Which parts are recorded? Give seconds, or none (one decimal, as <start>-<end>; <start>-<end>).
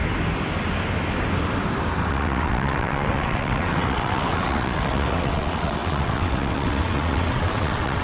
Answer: 0.0-2.1